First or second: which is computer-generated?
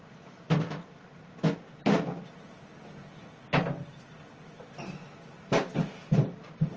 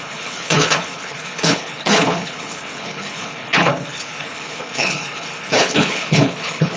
second